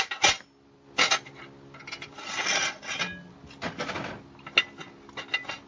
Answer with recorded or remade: recorded